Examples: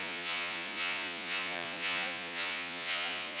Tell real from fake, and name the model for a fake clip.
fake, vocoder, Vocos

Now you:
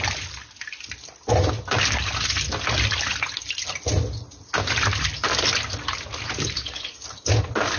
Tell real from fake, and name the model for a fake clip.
real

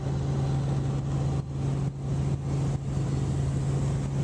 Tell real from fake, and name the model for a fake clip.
real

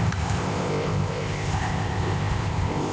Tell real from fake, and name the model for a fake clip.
fake, codec, ZipCodec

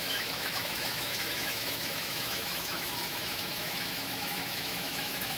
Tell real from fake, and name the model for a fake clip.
fake, autoencoder, DAC-VAE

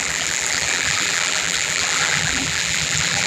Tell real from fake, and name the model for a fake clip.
fake, vocoder, BigVGAN v2